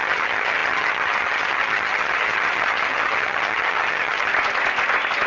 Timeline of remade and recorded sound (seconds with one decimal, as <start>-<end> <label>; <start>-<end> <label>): 0.0-4.3 remade; 4.3-5.3 recorded